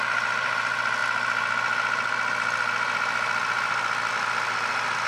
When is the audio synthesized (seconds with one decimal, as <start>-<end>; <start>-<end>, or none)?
0.0-1.0; 4.1-5.1